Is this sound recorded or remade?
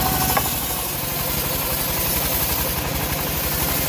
recorded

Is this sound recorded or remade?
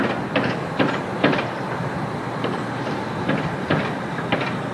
recorded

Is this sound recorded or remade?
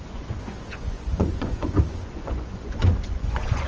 remade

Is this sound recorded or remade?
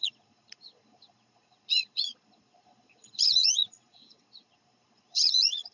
remade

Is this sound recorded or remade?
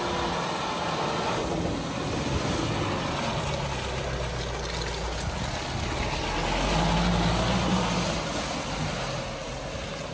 recorded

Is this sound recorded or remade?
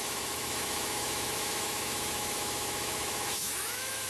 remade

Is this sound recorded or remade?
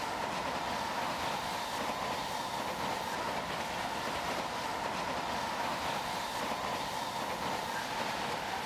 recorded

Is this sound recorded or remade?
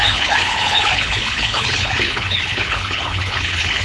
remade